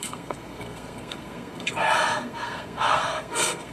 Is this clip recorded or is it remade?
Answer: remade